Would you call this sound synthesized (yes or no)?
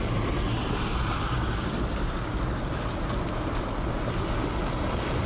no